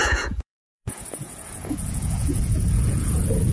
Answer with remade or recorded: remade